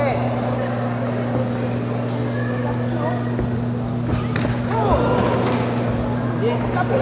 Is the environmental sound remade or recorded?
recorded